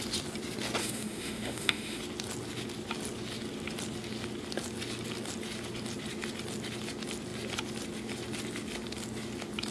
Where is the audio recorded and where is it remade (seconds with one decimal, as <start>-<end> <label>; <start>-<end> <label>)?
0.0-0.8 recorded; 0.8-2.0 remade; 2.0-9.7 recorded